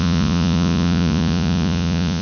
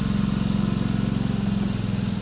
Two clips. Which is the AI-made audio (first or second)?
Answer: first